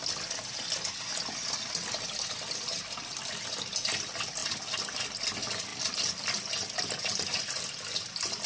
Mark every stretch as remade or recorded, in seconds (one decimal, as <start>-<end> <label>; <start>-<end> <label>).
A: 0.0-8.5 recorded